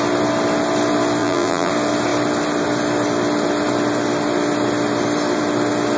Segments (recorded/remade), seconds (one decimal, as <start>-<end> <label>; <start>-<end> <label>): 0.0-1.2 recorded; 1.2-1.7 remade; 1.7-6.0 recorded